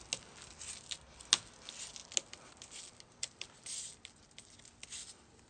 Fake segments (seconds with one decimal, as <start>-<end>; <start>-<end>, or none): none